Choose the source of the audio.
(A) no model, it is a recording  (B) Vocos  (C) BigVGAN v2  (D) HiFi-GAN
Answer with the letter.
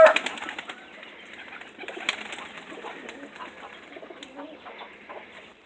A